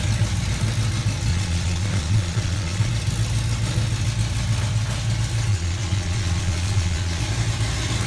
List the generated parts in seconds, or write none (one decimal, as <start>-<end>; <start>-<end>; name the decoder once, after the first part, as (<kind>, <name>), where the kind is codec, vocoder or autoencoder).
1.3-2.9 (vocoder, Vocos); 5.5-7.2